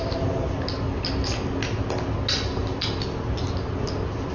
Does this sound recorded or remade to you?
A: recorded